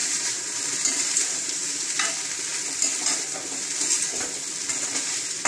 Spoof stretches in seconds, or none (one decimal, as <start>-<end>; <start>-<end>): 0.0-2.1